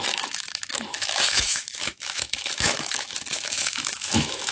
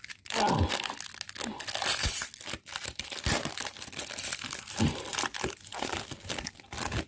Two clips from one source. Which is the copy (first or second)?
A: first